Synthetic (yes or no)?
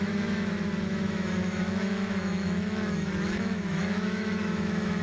yes